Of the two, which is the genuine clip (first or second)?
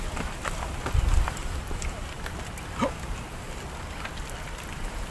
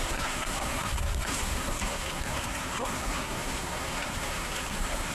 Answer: first